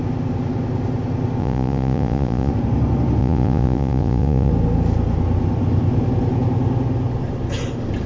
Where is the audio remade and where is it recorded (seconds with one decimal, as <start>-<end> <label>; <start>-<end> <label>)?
0.0-1.4 recorded; 1.4-2.5 remade; 2.5-3.2 recorded; 3.2-4.5 remade; 4.5-8.1 recorded